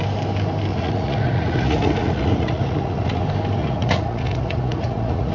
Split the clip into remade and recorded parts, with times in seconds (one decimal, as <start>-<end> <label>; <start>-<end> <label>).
0.0-0.7 recorded; 0.7-3.2 remade; 3.2-3.6 recorded; 3.6-5.3 remade